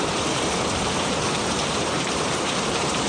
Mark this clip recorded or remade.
remade